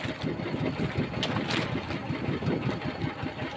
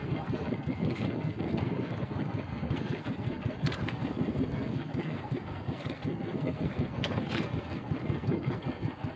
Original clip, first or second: first